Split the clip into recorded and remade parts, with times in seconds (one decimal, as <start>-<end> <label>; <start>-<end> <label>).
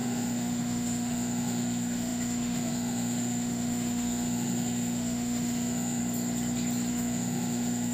0.0-6.0 remade; 6.0-6.9 recorded; 6.9-7.9 remade